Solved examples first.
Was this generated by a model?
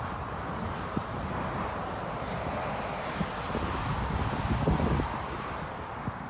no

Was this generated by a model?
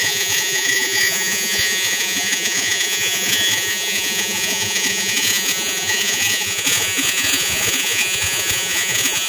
yes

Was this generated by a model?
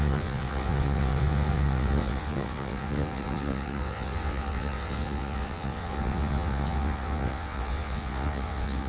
yes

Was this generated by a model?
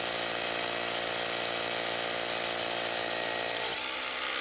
no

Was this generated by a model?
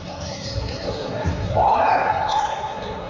yes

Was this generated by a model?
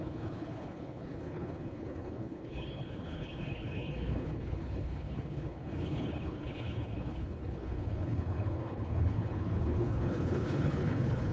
yes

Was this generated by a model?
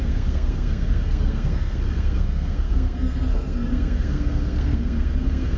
yes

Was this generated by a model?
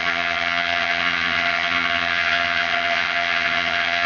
yes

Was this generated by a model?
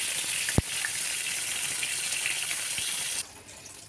no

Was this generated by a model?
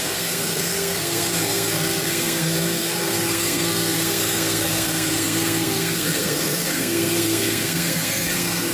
yes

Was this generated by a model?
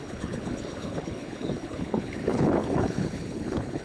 yes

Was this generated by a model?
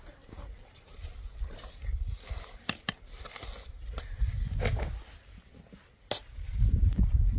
no